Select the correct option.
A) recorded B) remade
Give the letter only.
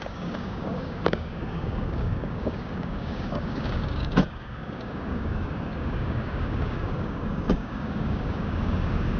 B